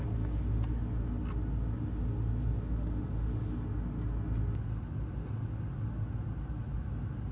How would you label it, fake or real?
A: real